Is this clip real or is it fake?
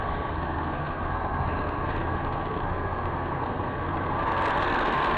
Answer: fake